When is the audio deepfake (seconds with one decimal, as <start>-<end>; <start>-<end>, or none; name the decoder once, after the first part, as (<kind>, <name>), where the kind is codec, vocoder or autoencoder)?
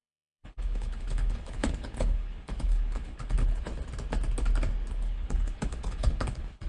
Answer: 0.0-3.7 (codec, HILCodec); 4.9-6.7